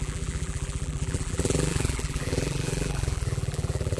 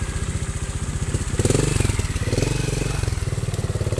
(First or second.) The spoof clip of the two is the first